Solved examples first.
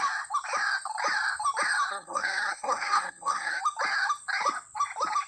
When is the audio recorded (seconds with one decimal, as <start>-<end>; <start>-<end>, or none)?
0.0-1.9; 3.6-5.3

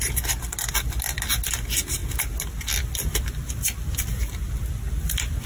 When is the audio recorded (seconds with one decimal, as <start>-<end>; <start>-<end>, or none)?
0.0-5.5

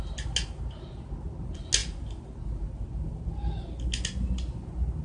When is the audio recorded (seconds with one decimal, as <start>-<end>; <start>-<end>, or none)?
0.0-5.0